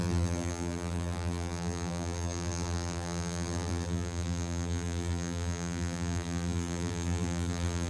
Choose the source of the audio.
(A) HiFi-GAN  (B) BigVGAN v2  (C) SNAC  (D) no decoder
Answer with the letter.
B